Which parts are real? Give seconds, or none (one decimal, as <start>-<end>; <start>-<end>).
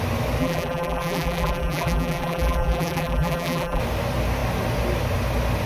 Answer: 0.0-0.4; 3.8-5.7